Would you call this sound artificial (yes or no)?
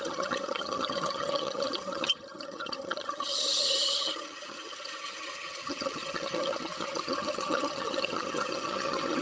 yes